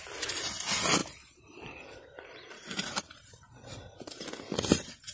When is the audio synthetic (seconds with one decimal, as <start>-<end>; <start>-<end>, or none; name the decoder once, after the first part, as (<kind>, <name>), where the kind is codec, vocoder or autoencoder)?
1.0-4.1 (vocoder, BigVGAN v2)